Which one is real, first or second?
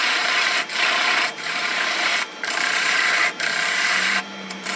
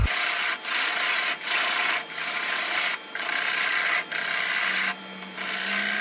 second